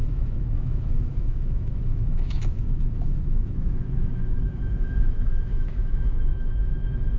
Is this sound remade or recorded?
remade